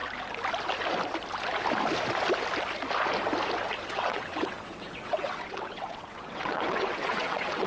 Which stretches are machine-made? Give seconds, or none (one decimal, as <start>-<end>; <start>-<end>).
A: 3.9-7.7